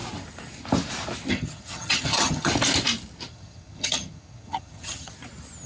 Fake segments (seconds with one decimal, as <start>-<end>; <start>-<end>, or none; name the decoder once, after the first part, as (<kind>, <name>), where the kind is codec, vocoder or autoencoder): 1.3-2.5 (vocoder, HiFi-GAN); 3.3-5.1